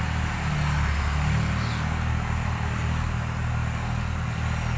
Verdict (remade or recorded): recorded